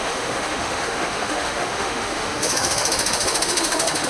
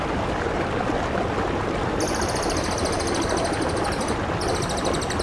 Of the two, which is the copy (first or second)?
first